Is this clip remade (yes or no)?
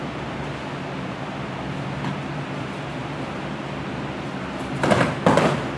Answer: no